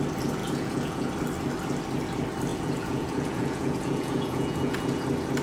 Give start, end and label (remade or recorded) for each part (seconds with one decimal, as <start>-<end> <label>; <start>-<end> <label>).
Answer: 0.0-0.4 recorded; 0.4-1.1 remade; 1.1-2.5 recorded; 2.5-5.0 remade; 5.0-5.4 recorded

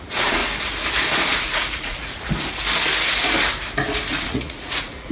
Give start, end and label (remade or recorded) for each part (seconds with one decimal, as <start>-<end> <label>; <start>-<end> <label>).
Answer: 0.0-0.4 remade; 0.4-1.4 recorded; 1.4-2.3 remade; 2.3-4.1 recorded; 4.1-5.1 remade

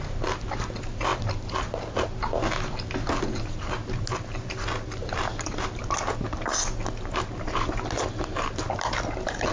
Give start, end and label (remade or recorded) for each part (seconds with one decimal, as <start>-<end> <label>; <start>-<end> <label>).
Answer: 0.0-9.5 recorded

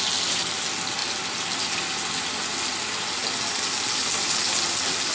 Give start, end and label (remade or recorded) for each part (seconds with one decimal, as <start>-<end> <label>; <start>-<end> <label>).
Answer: 0.0-5.1 recorded